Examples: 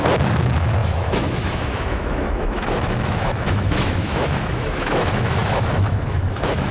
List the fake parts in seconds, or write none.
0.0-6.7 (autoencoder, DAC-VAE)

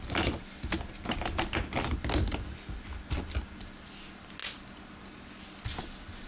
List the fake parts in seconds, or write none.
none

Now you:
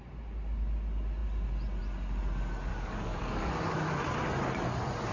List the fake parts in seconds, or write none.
2.7-3.5 (codec, DAC)

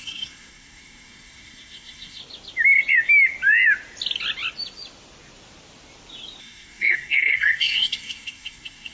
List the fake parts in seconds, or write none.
0.0-2.2 (codec, SNAC); 6.4-8.9